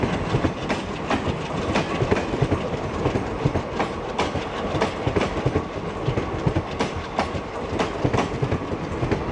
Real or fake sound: real